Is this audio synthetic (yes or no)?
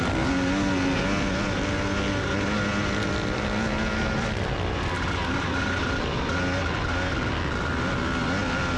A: no